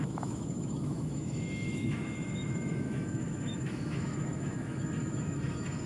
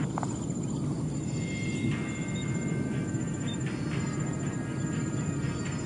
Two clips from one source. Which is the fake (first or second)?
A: first